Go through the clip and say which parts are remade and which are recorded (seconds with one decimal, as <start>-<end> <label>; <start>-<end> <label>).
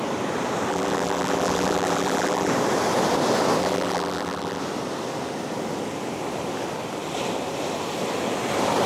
0.0-0.7 recorded; 0.7-2.5 remade; 2.5-3.6 recorded; 3.6-4.6 remade; 4.6-8.9 recorded